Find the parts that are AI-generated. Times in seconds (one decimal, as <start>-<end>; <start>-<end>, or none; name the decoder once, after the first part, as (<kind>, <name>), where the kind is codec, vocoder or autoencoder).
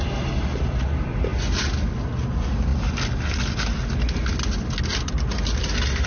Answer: none